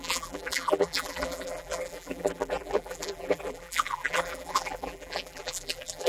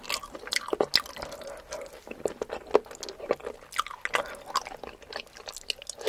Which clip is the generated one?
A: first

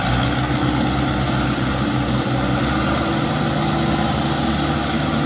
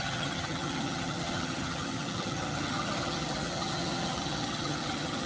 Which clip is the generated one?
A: second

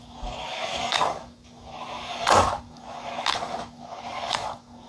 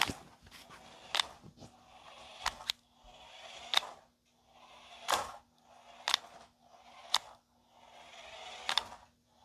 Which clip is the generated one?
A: first